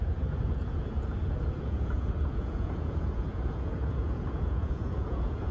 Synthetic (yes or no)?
yes